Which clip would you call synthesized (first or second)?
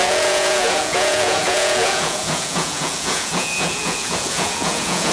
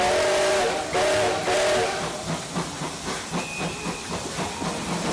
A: first